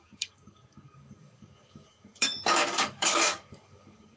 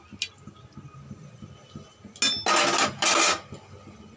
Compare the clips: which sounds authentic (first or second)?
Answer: second